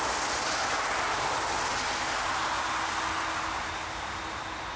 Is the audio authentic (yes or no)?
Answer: yes